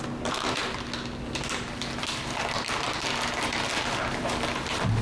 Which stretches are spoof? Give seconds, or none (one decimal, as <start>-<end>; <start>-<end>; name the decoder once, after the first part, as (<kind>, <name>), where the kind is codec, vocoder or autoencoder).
none